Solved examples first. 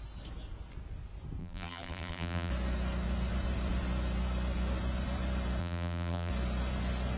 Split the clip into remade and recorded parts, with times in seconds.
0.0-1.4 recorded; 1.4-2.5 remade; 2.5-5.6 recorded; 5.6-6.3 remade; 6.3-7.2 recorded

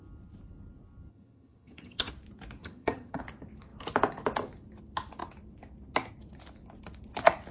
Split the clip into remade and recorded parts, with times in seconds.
0.0-1.1 recorded; 1.1-2.1 remade; 2.1-2.6 recorded; 2.6-3.2 remade; 3.2-7.5 recorded

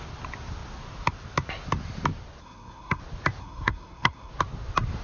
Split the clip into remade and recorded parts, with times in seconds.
0.0-2.4 recorded; 2.4-3.0 remade; 3.0-3.4 recorded; 3.4-4.3 remade; 4.3-5.0 recorded